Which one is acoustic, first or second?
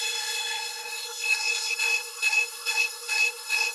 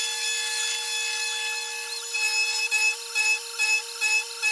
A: second